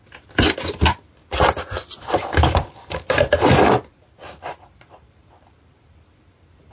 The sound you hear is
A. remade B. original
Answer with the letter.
A